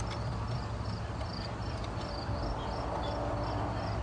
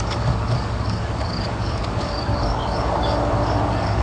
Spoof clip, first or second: second